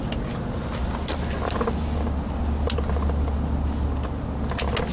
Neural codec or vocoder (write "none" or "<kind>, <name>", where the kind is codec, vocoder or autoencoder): none